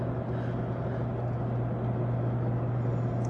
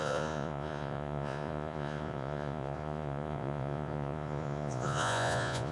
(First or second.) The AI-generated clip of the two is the second